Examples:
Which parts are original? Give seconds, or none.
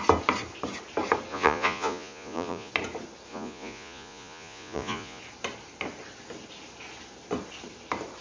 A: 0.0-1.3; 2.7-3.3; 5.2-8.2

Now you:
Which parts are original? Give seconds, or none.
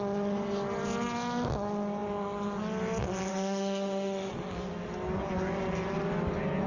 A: 0.0-3.3; 4.3-6.7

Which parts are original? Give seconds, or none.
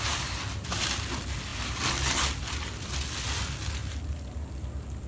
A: 0.0-5.1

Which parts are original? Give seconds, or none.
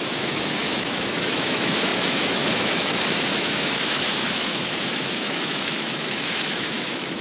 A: none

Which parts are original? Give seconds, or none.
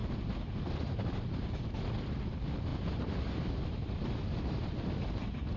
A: 0.0-2.7; 4.9-5.6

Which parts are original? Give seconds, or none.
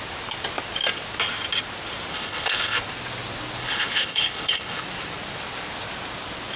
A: 0.0-2.1; 2.8-3.6; 4.8-6.6